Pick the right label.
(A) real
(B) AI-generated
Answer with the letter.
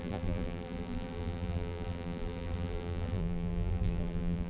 B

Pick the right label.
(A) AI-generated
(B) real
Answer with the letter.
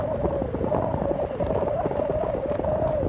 B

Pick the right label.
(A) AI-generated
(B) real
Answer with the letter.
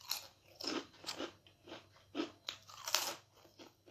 B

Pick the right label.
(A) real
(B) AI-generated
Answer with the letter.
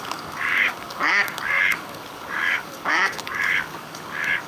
B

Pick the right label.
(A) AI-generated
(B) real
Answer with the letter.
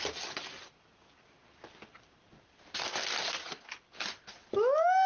B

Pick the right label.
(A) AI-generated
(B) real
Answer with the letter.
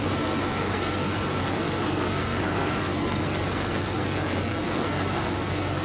A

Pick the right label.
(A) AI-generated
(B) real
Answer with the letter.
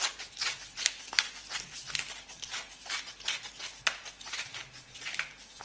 B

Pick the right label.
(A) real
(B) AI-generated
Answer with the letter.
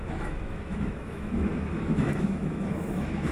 B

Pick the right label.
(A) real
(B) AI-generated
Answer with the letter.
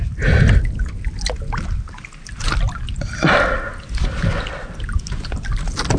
A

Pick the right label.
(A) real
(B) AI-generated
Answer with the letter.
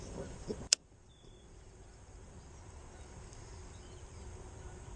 B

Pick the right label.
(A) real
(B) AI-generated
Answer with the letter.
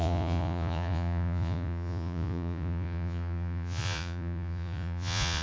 B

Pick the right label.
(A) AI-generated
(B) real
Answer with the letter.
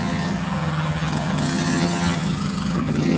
A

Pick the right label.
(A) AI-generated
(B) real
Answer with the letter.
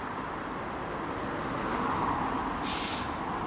B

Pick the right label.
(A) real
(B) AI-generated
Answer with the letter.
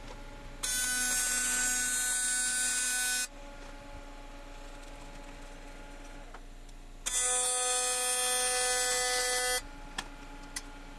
A